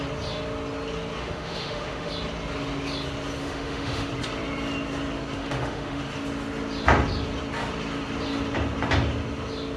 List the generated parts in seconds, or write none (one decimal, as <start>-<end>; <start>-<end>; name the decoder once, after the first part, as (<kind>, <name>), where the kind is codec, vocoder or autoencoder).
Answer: 1.2-2.1 (autoencoder, DAC-VAE); 3.4-4.1; 5.4-6.0